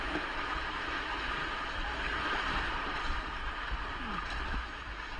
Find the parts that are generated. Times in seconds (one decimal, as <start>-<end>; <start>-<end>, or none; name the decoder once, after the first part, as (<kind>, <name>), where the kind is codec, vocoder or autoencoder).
0.0-1.4 (autoencoder, DAC-VAE); 4.5-5.2